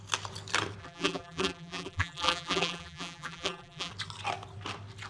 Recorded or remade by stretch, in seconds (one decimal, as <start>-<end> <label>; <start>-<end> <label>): 0.0-0.8 recorded; 0.8-3.9 remade; 3.9-5.1 recorded